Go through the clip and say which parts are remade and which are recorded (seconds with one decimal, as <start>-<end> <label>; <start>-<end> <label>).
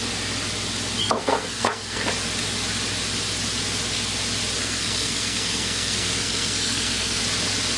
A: 0.0-1.0 recorded; 1.0-2.1 remade; 2.1-4.6 recorded; 4.6-7.2 remade; 7.2-7.8 recorded